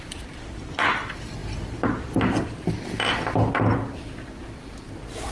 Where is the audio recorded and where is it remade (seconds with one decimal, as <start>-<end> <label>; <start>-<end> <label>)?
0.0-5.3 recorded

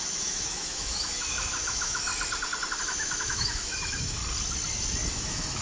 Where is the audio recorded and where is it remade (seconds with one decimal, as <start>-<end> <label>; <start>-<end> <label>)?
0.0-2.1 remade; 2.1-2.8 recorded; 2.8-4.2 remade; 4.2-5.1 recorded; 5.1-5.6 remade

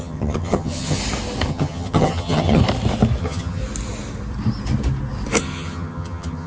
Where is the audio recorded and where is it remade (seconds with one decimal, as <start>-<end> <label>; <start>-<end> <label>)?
0.0-1.0 remade; 1.0-1.5 recorded; 1.5-2.6 remade; 2.6-3.2 recorded; 3.2-3.6 remade; 3.6-5.4 recorded; 5.4-6.5 remade

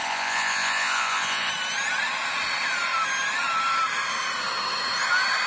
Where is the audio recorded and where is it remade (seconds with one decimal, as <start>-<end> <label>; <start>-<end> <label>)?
0.0-1.5 remade; 1.5-5.5 recorded